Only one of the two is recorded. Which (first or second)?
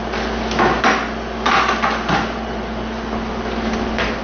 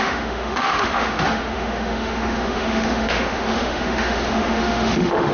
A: first